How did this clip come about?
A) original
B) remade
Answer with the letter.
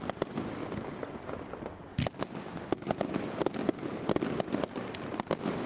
A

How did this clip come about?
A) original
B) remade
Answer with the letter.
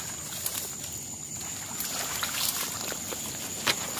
A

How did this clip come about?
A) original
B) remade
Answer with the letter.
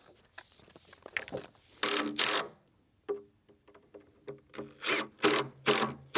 A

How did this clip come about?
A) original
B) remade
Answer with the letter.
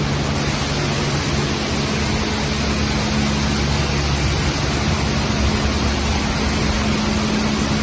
A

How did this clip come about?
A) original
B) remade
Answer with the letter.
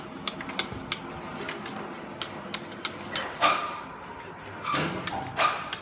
A